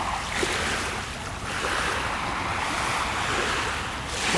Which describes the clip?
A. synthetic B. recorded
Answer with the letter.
B